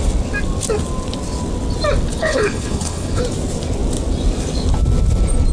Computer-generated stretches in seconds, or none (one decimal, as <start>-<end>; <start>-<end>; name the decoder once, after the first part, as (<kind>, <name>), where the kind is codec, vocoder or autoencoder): 2.2-3.2 (codec, HILCodec)